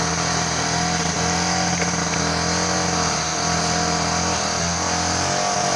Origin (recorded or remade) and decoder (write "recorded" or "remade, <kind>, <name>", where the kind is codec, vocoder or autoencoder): recorded